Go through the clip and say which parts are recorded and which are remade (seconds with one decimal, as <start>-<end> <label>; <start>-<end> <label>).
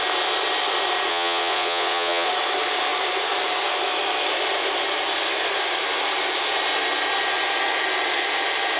0.0-1.1 recorded; 1.1-2.3 remade; 2.3-8.8 recorded